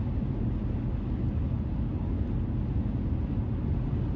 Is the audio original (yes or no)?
yes